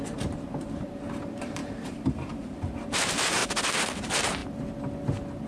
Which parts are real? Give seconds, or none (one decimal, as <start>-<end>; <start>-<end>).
3.4-4.0; 4.4-5.5